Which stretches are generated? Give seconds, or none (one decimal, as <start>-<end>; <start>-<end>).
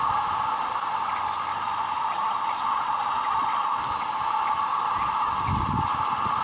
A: 1.5-3.8